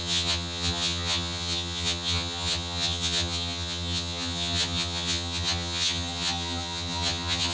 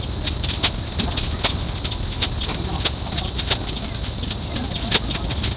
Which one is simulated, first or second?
first